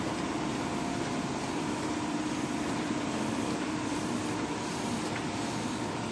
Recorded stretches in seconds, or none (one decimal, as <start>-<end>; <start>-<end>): 0.0-1.4; 4.6-6.1

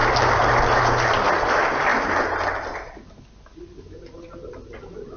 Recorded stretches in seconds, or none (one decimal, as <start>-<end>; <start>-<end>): 1.9-5.2

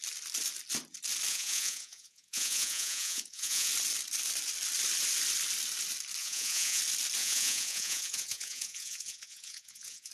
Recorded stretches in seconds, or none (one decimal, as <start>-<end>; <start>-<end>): 0.0-1.3; 3.7-6.2; 6.8-7.2